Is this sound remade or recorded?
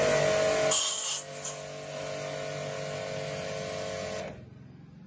recorded